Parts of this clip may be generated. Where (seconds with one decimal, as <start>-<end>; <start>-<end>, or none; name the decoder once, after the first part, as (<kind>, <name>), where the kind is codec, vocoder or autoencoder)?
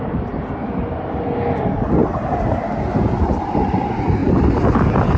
none